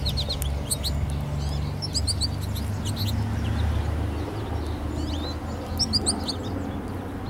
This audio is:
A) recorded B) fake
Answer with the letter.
A